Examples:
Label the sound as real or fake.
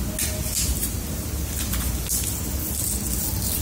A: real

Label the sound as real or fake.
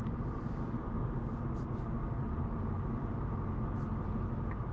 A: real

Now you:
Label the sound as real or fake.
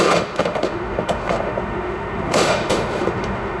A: fake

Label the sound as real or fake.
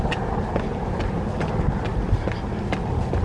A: real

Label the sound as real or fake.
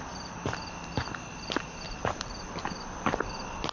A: real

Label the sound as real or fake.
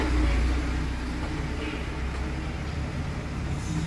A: real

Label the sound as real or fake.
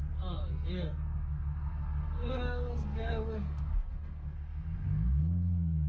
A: fake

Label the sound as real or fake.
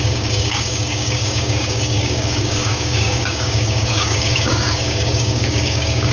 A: fake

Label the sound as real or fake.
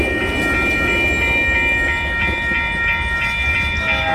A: real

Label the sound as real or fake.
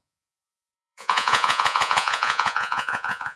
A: fake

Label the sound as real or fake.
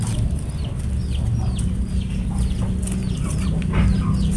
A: real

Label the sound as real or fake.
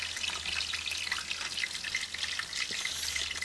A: real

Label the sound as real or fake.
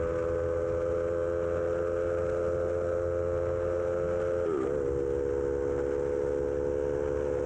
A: real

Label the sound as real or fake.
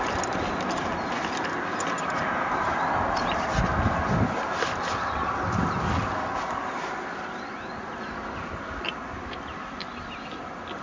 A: real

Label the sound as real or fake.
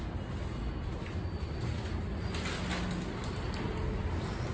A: real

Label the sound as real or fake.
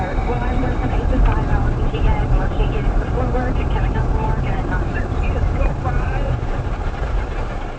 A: fake